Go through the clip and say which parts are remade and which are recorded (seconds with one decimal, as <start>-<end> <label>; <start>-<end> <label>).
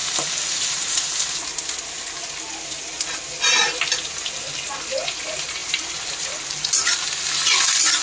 0.0-1.2 remade; 1.2-5.6 recorded; 5.6-6.7 remade; 6.7-8.0 recorded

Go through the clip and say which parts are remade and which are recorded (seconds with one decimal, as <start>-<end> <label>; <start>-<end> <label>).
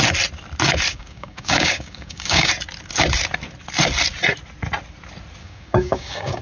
0.0-0.9 recorded; 0.9-2.5 remade; 2.5-5.4 recorded; 5.4-6.4 remade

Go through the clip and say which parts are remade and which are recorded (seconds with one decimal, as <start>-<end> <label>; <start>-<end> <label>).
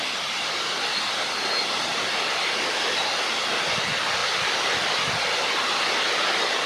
0.0-6.7 recorded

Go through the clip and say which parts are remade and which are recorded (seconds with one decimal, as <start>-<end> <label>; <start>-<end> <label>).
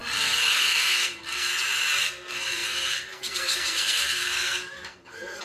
0.0-1.5 remade; 1.5-2.0 recorded; 2.0-5.4 remade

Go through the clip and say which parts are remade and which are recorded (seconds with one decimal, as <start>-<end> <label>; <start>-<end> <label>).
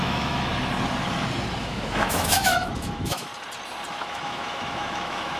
0.0-0.5 remade; 0.5-1.6 recorded; 1.6-3.3 remade; 3.3-3.9 recorded; 3.9-5.4 remade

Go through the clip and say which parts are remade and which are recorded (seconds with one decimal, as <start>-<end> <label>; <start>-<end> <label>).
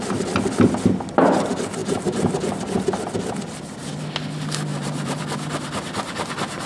0.0-1.8 recorded; 1.8-2.5 remade; 2.5-4.7 recorded; 4.7-5.2 remade; 5.2-6.7 recorded